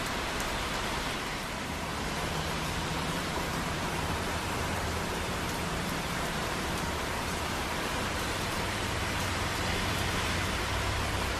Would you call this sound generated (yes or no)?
yes